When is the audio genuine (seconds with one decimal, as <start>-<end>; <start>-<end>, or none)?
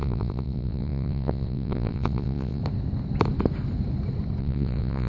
2.6-4.4